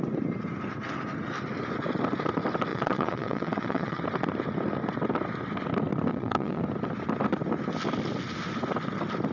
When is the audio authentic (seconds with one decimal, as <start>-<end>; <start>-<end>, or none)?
0.0-2.7; 4.0-6.1; 6.6-9.3